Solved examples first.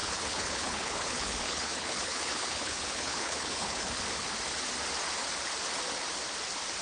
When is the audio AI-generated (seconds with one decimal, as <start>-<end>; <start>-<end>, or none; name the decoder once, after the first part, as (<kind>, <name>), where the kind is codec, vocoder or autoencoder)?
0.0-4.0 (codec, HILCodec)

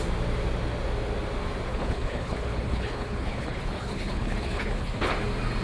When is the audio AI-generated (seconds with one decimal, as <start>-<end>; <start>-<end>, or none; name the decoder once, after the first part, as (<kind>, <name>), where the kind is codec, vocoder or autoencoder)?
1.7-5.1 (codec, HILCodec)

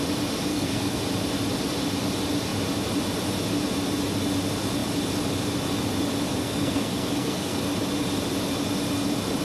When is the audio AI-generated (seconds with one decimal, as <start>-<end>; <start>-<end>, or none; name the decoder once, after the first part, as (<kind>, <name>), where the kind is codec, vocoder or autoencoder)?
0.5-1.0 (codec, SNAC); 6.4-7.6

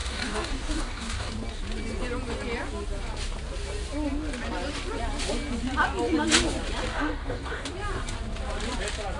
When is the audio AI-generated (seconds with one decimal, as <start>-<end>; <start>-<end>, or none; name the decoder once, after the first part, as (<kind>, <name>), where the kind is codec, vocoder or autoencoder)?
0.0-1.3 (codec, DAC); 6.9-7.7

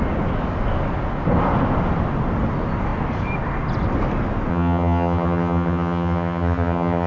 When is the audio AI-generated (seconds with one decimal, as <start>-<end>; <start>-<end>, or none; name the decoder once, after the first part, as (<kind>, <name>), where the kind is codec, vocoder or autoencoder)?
4.5-7.1 (vocoder, HiFi-GAN)

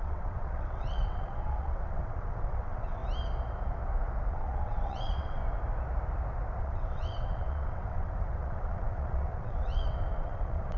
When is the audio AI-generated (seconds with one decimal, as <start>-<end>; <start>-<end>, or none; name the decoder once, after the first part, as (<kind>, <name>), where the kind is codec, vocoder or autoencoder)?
0.0-3.0 (vocoder, WaveNeXt); 4.3-5.4; 6.6-10.8